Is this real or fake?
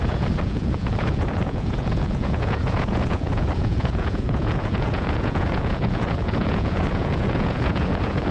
fake